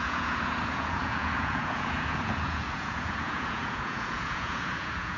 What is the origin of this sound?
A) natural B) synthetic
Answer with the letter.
B